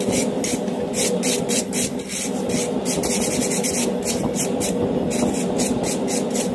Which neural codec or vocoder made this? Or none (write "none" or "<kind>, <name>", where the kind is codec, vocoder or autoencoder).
none